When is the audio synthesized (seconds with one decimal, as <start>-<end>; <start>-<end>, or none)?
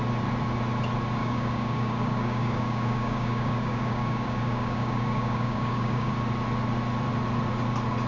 1.2-6.1